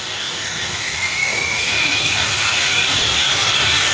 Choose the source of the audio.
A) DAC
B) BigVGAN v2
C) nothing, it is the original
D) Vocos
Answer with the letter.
A